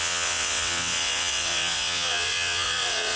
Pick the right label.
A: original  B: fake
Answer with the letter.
B